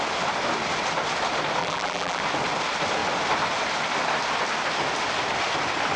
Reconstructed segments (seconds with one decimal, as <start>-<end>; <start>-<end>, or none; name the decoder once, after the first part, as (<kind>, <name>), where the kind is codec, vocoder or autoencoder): 1.6-2.2 (vocoder, BigVGAN v2)